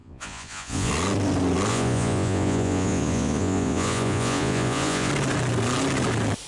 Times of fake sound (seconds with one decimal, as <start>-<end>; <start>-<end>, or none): 0.0-0.9; 1.7-5.1